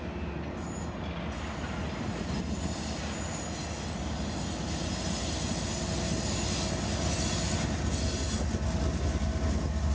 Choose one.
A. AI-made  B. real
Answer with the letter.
B